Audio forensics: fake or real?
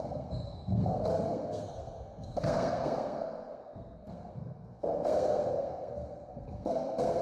fake